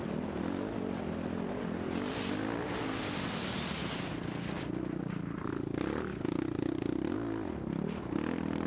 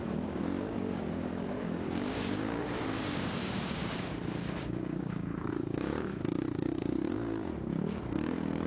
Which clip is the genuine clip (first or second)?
first